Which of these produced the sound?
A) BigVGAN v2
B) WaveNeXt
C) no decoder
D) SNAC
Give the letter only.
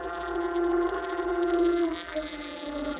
A